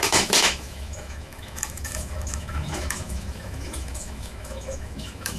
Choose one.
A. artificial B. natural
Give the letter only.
A